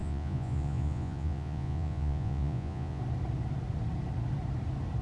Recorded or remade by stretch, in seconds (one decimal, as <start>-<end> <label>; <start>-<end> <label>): 0.0-3.0 remade; 3.0-5.0 recorded

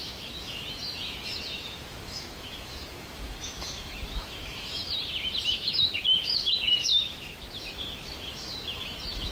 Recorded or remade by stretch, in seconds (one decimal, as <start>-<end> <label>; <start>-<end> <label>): 0.0-4.8 remade; 4.8-5.5 recorded; 5.5-9.3 remade

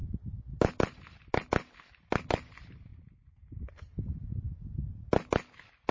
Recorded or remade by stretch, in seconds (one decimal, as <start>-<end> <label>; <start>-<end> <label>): 0.0-2.9 recorded; 2.9-4.2 remade; 4.2-5.9 recorded

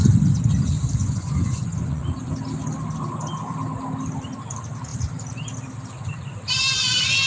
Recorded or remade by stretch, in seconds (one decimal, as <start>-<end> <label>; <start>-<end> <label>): 0.0-1.0 recorded; 1.0-2.3 remade; 2.3-7.3 recorded

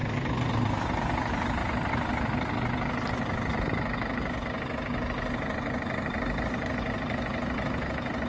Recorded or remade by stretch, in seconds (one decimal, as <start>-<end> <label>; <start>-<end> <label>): 0.0-8.3 recorded

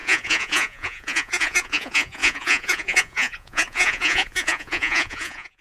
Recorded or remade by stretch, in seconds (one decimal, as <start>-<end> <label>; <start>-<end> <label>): 0.0-5.6 remade

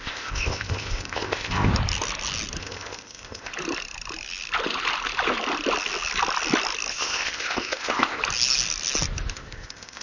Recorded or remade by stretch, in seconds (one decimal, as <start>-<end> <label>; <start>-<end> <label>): 0.0-1.7 remade; 1.7-2.6 recorded; 2.6-3.5 remade; 3.5-6.9 recorded; 6.9-8.2 remade; 8.2-9.3 recorded; 9.3-10.0 remade